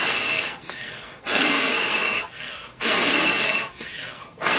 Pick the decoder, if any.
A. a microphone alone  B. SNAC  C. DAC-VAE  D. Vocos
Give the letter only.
B